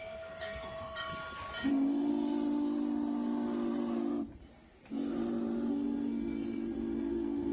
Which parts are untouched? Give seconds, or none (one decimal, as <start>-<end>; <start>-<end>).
1.1-1.7; 2.1-5.7